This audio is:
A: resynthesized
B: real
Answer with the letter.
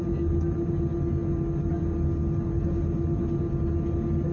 B